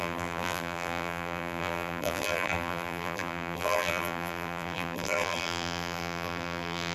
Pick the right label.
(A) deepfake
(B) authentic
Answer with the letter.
A